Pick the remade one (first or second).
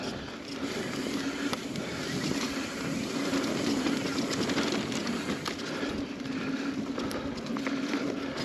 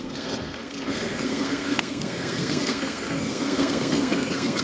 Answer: second